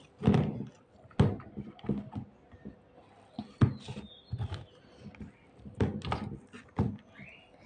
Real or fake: real